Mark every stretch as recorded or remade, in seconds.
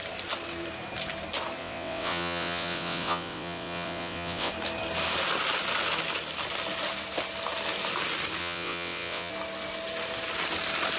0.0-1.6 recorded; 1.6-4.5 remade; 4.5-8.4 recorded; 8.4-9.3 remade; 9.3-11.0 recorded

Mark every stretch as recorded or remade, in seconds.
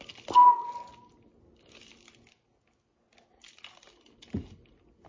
0.0-5.1 recorded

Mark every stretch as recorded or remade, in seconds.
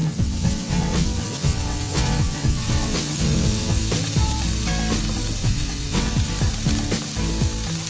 0.0-3.8 remade; 3.8-5.4 recorded; 5.4-6.1 remade; 6.1-7.9 recorded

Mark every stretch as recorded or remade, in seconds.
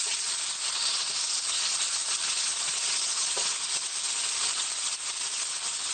0.0-3.9 remade; 3.9-4.9 recorded; 4.9-5.9 remade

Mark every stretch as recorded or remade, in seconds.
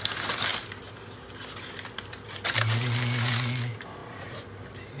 0.0-5.0 recorded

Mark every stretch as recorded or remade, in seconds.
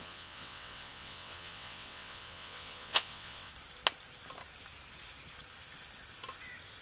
0.0-3.5 remade; 3.5-6.8 recorded